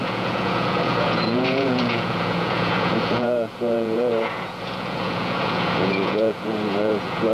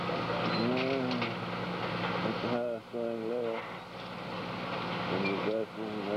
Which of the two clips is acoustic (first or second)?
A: second